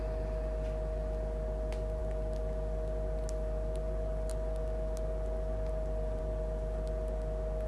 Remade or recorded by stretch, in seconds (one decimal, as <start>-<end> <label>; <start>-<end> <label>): 0.0-7.7 recorded